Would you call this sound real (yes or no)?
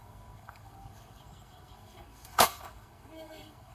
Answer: no